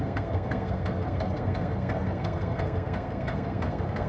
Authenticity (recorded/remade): remade